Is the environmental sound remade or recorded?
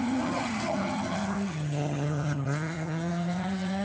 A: remade